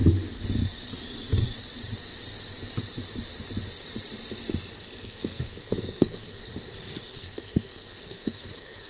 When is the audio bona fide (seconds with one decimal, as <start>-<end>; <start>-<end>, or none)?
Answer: 0.0-5.0; 6.4-7.1